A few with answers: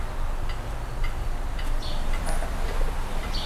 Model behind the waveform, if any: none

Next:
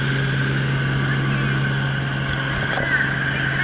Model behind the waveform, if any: none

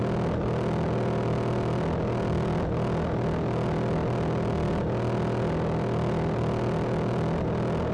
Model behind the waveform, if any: none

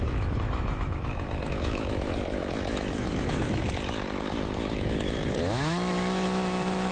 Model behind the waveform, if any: autoencoder, DAC-VAE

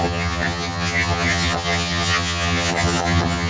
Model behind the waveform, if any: vocoder, HiFi-GAN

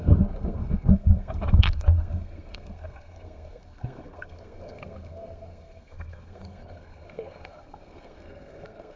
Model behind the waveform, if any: codec, SNAC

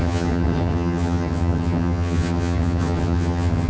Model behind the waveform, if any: vocoder, HiFi-GAN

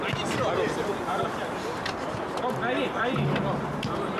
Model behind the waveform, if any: none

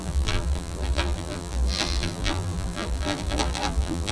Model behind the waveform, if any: vocoder, BigVGAN v2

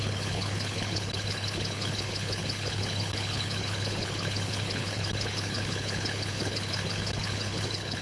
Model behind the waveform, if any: codec, HILCodec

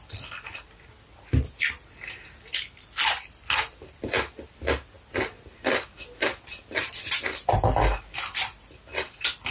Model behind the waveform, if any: none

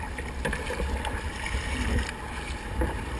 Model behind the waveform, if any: none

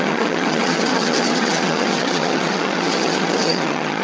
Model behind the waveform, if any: vocoder, HiFi-GAN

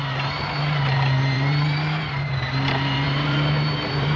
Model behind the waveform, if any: vocoder, BigVGAN v2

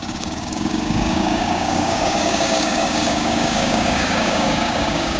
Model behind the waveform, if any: codec, DAC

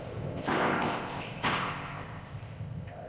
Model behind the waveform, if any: codec, ZipCodec